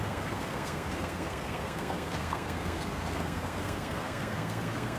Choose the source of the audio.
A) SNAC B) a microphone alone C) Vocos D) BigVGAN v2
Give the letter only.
A